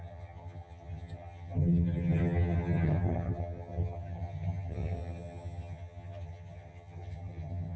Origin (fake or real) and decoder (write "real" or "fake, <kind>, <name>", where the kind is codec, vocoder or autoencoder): fake, vocoder, HiFi-GAN